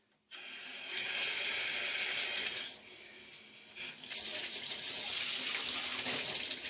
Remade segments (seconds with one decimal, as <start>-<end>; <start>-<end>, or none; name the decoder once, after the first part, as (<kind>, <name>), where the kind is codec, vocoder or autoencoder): 4.3-5.3 (vocoder, Vocos)